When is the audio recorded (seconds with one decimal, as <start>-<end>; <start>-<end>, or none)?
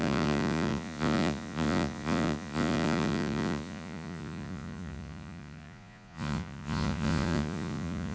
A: none